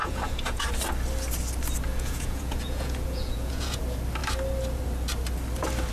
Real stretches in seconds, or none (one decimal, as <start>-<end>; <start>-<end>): 0.6-1.9; 3.8-5.9